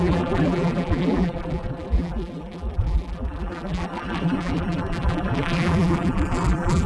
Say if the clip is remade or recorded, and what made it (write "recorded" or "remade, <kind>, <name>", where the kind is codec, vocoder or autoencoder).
remade, vocoder, BigVGAN v2